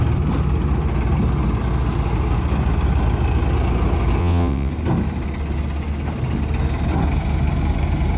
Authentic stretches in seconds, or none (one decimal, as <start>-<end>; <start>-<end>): 0.0-4.2; 4.7-8.2